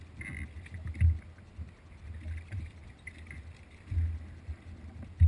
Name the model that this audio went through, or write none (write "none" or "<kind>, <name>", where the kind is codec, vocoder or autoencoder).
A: none